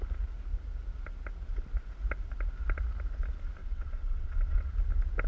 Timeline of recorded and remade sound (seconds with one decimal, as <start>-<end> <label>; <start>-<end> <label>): 0.0-3.6 recorded; 3.6-4.7 remade; 4.7-5.3 recorded